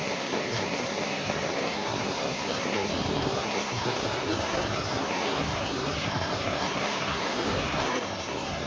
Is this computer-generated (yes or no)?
yes